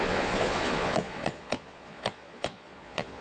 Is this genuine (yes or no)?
no